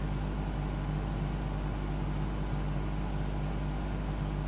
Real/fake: real